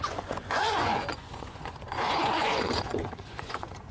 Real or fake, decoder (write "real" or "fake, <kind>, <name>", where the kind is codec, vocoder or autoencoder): fake, vocoder, Vocos